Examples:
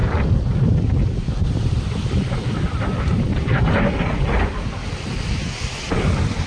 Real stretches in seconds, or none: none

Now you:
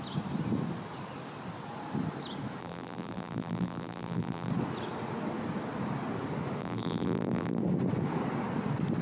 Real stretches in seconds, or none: 0.0-2.6; 4.5-6.6; 7.6-9.0

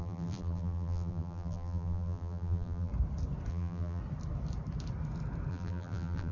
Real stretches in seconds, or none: 2.9-3.5; 4.0-5.5